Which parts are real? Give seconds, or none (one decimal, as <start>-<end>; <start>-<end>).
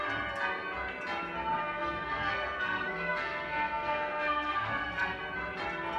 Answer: 0.0-1.6; 5.2-6.0